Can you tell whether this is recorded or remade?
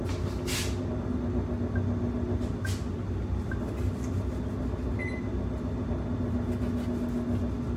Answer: recorded